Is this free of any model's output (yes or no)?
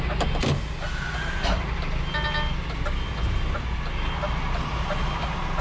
yes